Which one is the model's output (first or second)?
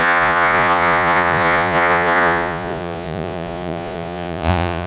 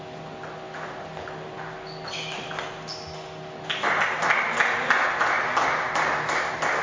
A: first